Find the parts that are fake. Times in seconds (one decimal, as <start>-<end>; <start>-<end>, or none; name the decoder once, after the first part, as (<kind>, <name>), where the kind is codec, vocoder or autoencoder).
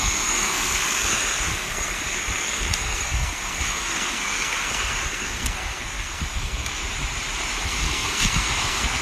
0.0-6.8 (codec, SNAC); 7.6-9.0